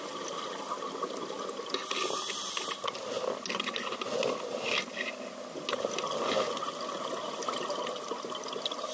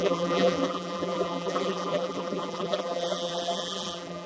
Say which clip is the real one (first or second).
first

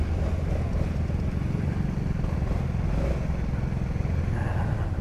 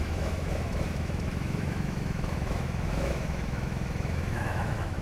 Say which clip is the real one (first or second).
first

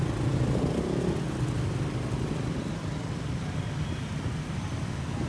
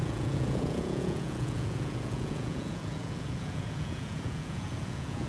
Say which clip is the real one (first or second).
first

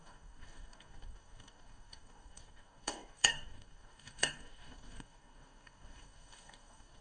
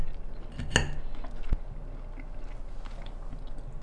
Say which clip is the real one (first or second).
second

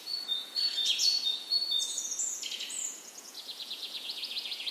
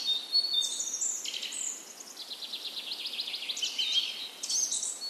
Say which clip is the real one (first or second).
second